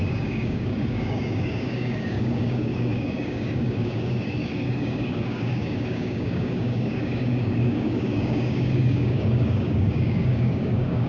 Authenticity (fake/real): fake